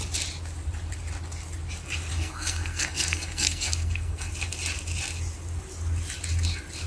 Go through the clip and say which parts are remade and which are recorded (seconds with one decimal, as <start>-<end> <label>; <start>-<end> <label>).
0.0-2.1 recorded; 2.1-4.3 remade; 4.3-6.9 recorded